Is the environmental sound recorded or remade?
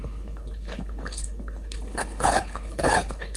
remade